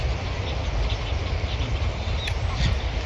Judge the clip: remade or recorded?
recorded